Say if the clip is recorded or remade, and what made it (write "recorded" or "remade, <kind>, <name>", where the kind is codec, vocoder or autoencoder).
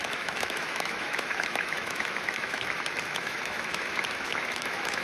remade, autoencoder, DAC-VAE